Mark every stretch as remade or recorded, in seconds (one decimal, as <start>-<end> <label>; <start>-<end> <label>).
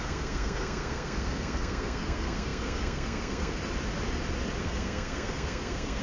0.0-3.6 remade; 3.6-4.6 recorded; 4.6-6.0 remade